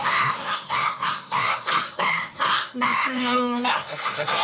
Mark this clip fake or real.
fake